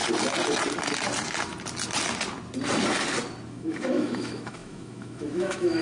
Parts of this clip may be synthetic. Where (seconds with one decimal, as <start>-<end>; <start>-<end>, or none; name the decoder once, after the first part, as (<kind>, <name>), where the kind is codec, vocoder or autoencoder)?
3.5-5.8 (autoencoder, DAC-VAE)